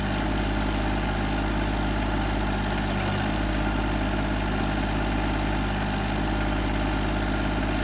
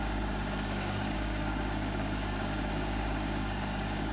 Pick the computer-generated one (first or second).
second